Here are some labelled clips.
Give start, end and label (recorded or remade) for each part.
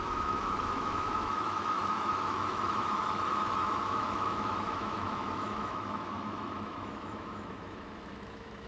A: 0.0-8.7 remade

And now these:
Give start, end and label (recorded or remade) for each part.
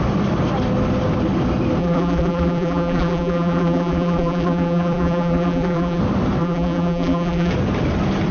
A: 0.0-1.8 recorded; 1.8-6.0 remade; 6.0-6.4 recorded; 6.4-7.5 remade; 7.5-8.3 recorded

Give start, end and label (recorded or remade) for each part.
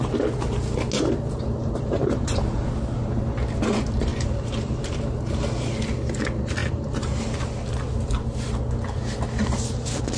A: 0.0-1.6 recorded; 1.6-2.6 remade; 2.6-4.1 recorded; 4.1-5.2 remade; 5.2-6.6 recorded; 6.6-7.2 remade; 7.2-10.2 recorded